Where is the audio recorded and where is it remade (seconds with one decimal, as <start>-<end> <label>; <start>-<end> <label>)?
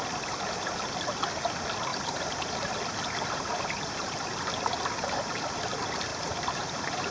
0.0-1.9 recorded; 1.9-2.8 remade; 2.8-6.1 recorded; 6.1-7.1 remade